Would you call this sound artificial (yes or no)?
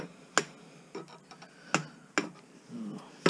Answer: no